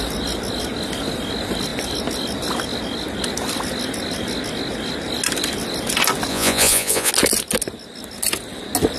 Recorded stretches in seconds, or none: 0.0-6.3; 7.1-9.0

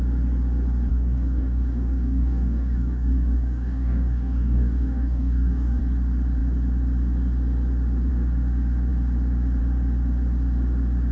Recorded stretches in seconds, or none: 0.0-0.9; 5.8-11.1

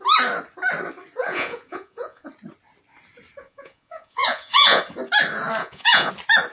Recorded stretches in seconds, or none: 0.0-1.2; 2.3-3.4; 4.8-5.6; 6.1-6.5

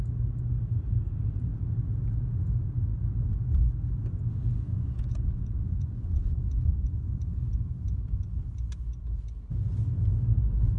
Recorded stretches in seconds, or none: 0.0-4.7; 7.5-10.8